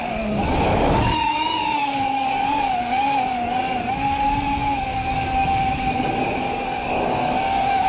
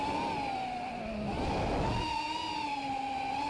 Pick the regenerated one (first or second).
first